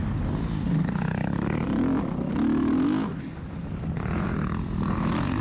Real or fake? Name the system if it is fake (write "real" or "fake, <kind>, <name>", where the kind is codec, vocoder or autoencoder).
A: real